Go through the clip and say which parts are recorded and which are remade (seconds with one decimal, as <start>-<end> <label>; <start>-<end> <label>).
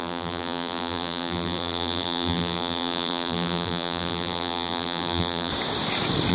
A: 0.0-5.5 remade; 5.5-6.3 recorded